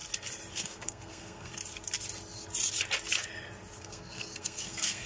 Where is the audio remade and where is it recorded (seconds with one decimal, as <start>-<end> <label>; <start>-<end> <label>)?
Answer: 0.0-0.5 recorded; 0.5-1.5 remade; 1.5-3.8 recorded; 3.8-5.1 remade